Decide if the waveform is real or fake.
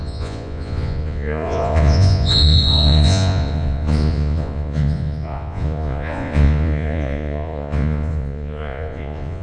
fake